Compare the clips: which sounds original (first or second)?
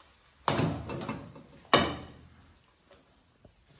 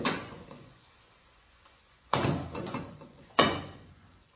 first